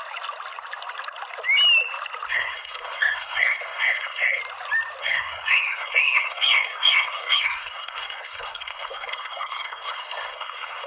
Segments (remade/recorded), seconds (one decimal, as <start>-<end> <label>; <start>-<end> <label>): 0.0-2.3 recorded; 2.3-4.4 remade; 4.4-5.0 recorded; 5.0-10.9 remade